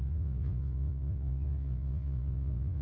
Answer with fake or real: fake